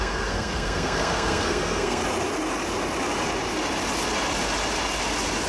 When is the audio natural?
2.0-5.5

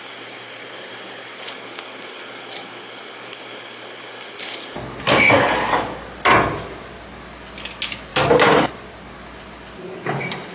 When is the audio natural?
0.0-10.5

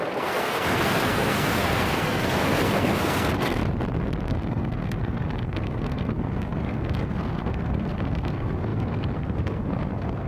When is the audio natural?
3.6-4.2

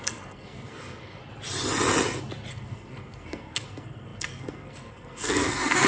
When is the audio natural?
1.2-2.5

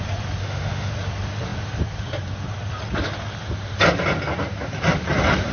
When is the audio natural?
0.0-0.4; 0.9-5.5

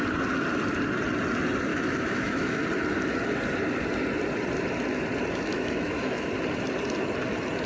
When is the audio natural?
0.0-1.7; 2.6-5.5; 6.3-7.7